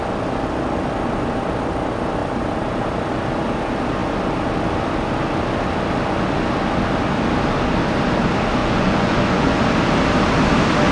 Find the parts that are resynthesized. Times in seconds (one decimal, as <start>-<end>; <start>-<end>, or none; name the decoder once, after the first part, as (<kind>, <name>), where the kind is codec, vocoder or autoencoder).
8.6-9.6 (vocoder, Vocos)

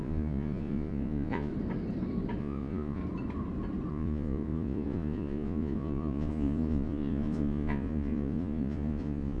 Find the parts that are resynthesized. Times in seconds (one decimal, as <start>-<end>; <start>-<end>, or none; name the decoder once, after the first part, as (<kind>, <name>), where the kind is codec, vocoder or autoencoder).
0.0-1.5 (vocoder, Vocos); 2.4-3.0; 3.9-9.4

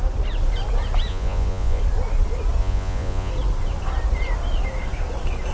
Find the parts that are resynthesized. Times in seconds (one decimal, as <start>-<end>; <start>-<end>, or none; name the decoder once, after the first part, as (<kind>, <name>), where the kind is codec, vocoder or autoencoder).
1.1-1.8 (vocoder, Vocos); 2.6-3.3

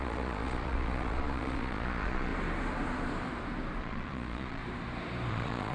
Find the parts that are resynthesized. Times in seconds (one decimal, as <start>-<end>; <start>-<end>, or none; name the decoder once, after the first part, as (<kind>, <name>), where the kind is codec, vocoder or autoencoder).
0.0-2.3 (vocoder, Vocos); 3.8-4.6; 5.3-5.7

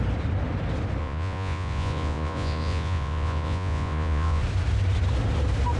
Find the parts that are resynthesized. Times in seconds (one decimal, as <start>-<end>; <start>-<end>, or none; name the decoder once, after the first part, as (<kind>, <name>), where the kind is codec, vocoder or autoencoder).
1.0-4.4 (vocoder, Vocos)